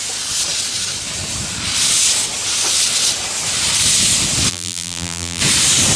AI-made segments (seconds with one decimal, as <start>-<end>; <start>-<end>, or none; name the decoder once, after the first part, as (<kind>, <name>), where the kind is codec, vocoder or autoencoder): 4.5-5.4 (vocoder, BigVGAN v2)